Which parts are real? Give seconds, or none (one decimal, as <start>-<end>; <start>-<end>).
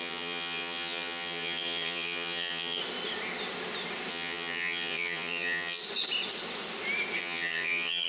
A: 2.8-4.1; 5.8-7.2